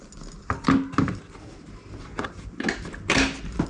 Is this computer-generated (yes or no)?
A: no